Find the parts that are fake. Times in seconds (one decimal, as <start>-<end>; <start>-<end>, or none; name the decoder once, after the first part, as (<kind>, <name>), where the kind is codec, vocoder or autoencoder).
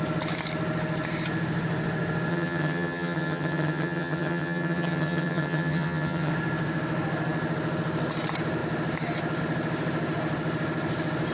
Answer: 2.3-6.3 (vocoder, HiFi-GAN)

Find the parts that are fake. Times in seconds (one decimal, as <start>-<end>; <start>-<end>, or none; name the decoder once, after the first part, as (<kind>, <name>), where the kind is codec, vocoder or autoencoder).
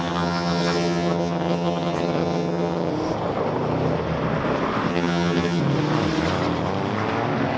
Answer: 0.0-2.9 (vocoder, HiFi-GAN); 4.9-5.6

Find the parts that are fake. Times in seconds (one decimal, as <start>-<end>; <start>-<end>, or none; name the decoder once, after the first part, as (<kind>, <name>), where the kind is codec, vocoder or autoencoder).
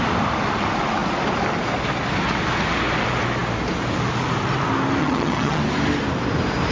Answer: 5.0-5.6 (vocoder, HiFi-GAN)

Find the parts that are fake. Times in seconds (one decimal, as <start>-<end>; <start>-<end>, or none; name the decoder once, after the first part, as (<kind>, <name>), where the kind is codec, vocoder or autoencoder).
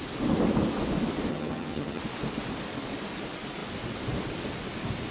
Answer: 1.3-2.0 (vocoder, HiFi-GAN)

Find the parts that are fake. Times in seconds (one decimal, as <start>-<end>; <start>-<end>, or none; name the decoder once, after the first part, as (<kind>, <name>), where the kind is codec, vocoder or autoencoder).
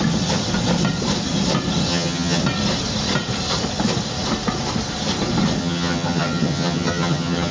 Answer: 1.9-2.4 (vocoder, HiFi-GAN); 5.6-7.5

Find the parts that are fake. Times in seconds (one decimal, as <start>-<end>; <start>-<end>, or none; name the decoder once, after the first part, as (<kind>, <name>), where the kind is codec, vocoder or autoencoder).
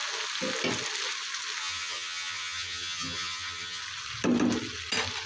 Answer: 1.6-3.8 (vocoder, HiFi-GAN)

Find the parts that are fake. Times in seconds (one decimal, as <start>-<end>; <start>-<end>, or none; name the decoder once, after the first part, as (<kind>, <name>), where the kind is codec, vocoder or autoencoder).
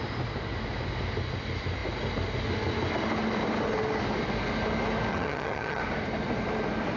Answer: 5.1-5.8 (vocoder, HiFi-GAN)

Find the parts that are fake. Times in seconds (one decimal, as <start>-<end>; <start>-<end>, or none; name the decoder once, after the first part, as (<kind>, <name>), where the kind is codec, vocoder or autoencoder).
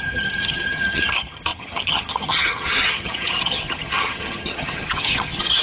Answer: 0.0-5.6 (vocoder, HiFi-GAN)